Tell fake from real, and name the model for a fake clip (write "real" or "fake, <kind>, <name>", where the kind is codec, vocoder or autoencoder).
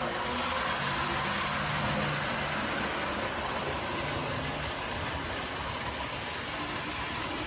real